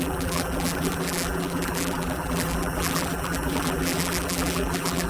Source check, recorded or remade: remade